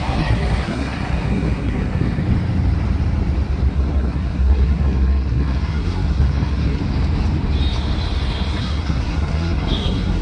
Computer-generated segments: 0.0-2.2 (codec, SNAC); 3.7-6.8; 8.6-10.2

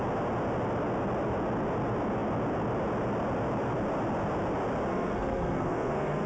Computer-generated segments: 4.9-6.3 (codec, SNAC)

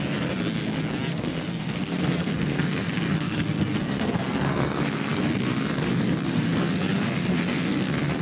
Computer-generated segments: 1.1-5.2 (codec, SNAC)